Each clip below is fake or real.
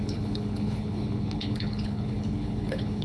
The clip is fake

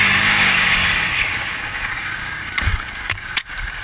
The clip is fake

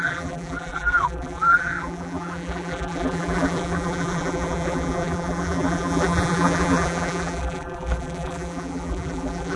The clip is fake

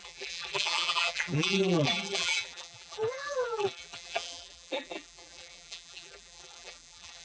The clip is fake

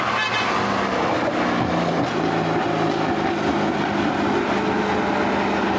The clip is real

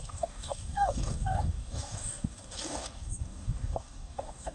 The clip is fake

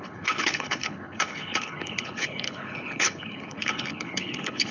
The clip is fake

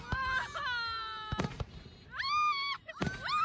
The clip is real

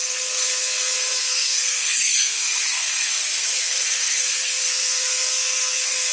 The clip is fake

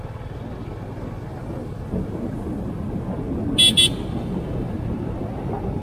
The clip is real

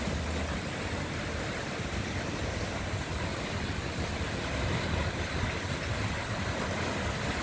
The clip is real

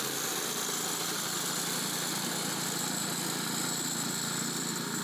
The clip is real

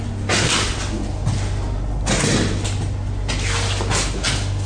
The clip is real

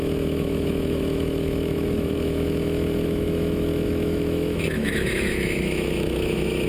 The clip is fake